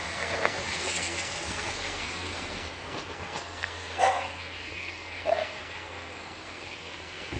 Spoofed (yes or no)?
yes